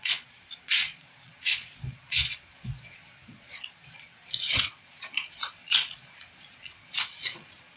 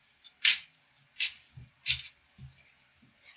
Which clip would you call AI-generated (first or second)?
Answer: first